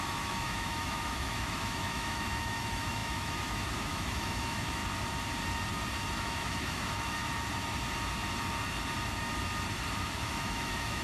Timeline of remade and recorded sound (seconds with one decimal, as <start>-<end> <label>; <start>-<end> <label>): 0.0-4.8 remade; 4.8-6.1 recorded; 6.1-7.2 remade; 7.2-10.0 recorded; 10.0-11.0 remade